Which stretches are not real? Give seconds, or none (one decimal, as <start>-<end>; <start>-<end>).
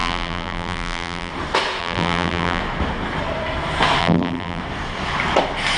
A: 0.0-1.3; 1.8-2.6; 4.0-4.6